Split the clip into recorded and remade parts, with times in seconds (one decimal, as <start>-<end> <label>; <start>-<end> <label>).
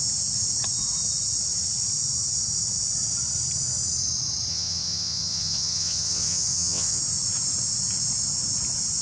0.0-4.5 recorded; 4.5-7.0 remade; 7.0-9.0 recorded